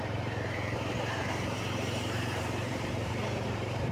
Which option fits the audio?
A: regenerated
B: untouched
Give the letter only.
A